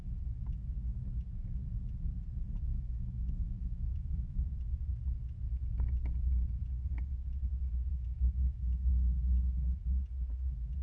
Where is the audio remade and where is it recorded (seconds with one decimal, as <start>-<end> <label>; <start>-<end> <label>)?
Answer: 0.0-2.7 recorded; 2.7-4.4 remade; 4.4-7.9 recorded; 7.9-8.9 remade; 8.9-10.8 recorded